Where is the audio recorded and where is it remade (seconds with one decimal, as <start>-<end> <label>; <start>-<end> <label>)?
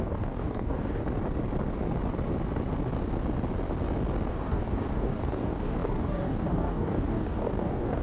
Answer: 0.0-1.0 remade; 1.0-4.3 recorded; 4.3-8.0 remade